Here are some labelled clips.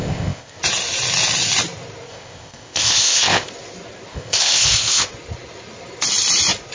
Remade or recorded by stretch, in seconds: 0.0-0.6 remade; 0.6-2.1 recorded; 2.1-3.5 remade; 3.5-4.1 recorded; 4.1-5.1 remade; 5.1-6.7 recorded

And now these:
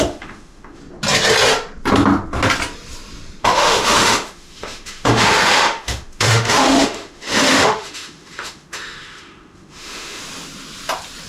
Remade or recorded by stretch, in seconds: 0.0-0.8 remade; 0.8-3.4 recorded; 3.4-10.2 remade; 10.2-11.3 recorded